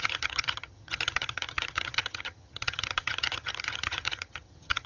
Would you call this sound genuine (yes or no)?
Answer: no